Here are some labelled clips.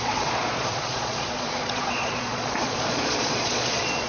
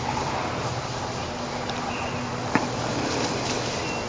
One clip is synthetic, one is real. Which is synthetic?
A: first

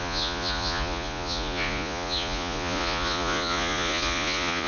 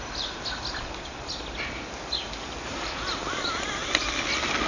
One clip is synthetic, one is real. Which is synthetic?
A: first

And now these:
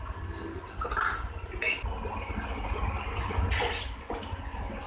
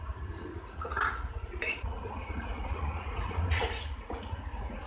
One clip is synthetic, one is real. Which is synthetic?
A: second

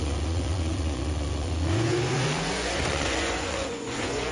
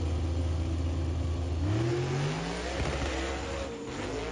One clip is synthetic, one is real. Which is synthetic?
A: first